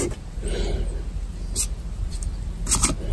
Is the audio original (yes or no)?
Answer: yes